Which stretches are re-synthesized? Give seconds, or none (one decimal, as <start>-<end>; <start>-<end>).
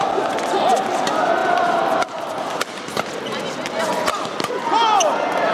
none